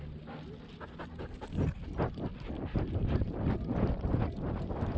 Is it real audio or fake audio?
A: real